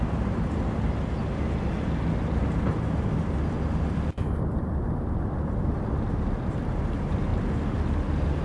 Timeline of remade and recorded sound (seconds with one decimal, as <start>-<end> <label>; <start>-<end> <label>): 0.0-8.4 recorded

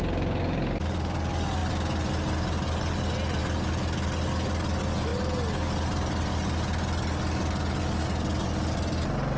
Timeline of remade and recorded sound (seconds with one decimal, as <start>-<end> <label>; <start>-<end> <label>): 0.0-9.4 recorded

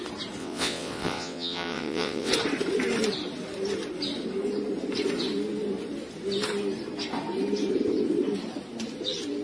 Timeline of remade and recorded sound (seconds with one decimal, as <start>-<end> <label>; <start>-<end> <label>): 0.0-0.4 recorded; 0.4-2.3 remade; 2.3-9.4 recorded

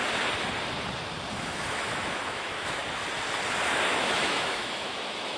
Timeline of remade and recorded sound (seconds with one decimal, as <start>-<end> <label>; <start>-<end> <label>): 0.0-1.3 recorded; 1.3-2.8 remade; 2.8-3.9 recorded; 3.9-5.4 remade

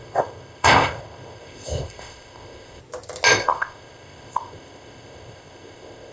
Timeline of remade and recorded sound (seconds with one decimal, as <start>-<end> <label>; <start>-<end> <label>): 0.0-2.8 remade; 2.8-3.4 recorded; 3.4-6.1 remade

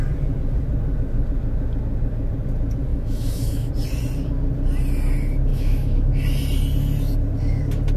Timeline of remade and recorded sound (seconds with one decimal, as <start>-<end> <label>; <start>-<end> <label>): 0.0-2.9 recorded; 2.9-3.7 remade; 3.7-5.5 recorded; 5.5-6.1 remade; 6.1-8.0 recorded

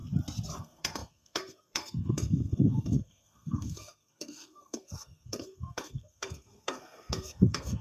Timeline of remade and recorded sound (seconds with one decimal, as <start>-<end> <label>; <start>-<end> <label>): 0.0-0.6 recorded; 0.6-7.8 remade

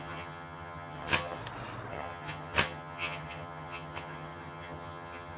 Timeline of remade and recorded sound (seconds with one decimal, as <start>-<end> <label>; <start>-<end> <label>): 0.0-1.4 remade; 1.4-1.9 recorded; 1.9-5.4 remade